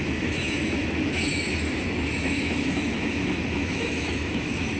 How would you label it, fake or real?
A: fake